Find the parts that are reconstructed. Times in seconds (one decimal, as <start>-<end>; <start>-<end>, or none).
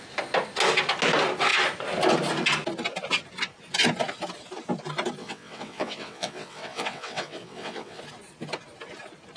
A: 5.2-8.0